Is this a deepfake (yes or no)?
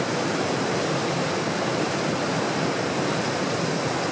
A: no